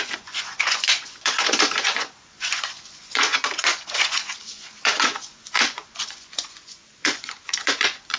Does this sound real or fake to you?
fake